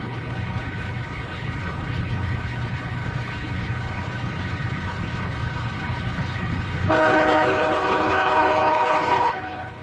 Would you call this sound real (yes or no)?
no